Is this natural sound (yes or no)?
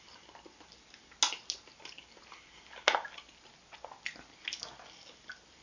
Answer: yes